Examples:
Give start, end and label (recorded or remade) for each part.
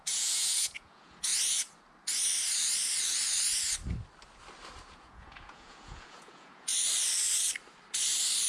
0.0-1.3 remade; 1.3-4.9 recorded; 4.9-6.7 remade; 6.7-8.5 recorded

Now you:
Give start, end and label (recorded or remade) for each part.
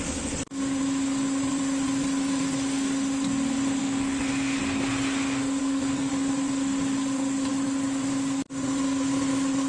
0.0-3.8 recorded; 3.8-4.6 remade; 4.6-5.6 recorded; 5.6-6.1 remade; 6.1-9.7 recorded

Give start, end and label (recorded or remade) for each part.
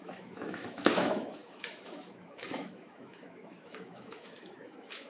0.0-5.1 remade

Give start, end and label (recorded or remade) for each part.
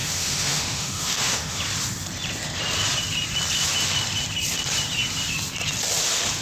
0.0-1.6 remade; 1.6-6.4 recorded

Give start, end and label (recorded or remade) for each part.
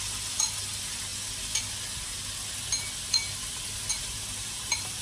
0.0-3.9 recorded; 3.9-5.0 remade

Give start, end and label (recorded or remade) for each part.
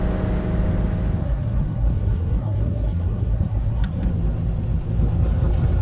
0.0-1.2 recorded; 1.2-4.1 remade; 4.1-5.8 recorded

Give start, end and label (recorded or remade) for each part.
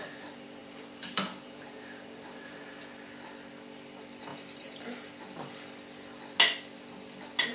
0.0-0.6 recorded; 0.6-2.8 remade; 2.8-4.3 recorded; 4.3-4.8 remade; 4.8-7.5 recorded